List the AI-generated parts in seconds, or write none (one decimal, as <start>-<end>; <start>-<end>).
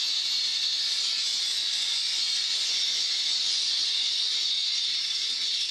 1.3-4.7